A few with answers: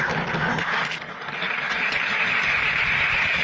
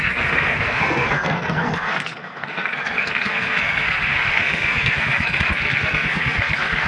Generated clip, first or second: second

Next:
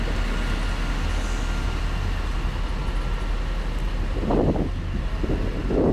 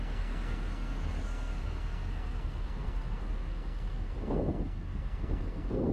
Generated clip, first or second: second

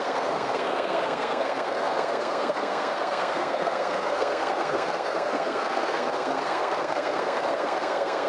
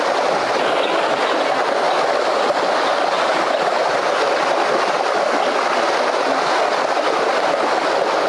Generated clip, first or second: first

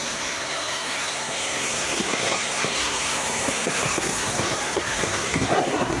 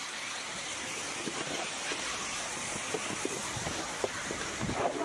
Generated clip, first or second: first